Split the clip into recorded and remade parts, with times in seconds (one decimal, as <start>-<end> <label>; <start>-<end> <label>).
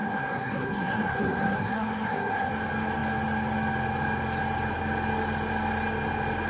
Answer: 0.0-2.5 remade; 2.5-6.5 recorded